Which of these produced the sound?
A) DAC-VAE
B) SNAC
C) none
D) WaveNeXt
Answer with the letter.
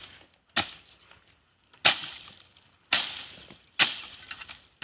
C